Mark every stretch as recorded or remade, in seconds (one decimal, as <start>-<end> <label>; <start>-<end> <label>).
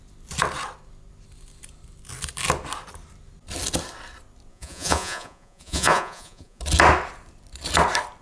0.0-4.5 recorded; 4.5-6.6 remade; 6.6-8.2 recorded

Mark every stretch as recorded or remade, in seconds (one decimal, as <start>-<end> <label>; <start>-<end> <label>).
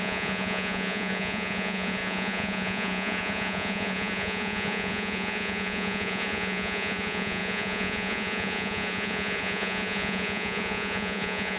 0.0-11.6 remade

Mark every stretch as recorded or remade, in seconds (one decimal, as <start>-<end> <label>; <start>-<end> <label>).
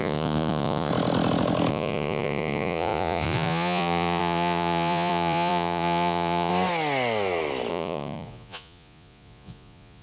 0.0-0.9 remade; 0.9-1.7 recorded; 1.7-6.5 remade; 6.5-7.7 recorded; 7.7-10.0 remade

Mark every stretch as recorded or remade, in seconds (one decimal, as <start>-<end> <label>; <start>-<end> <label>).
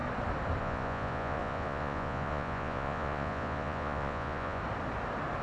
0.0-0.6 recorded; 0.6-4.6 remade; 4.6-5.4 recorded